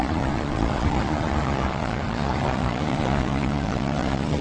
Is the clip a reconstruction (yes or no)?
yes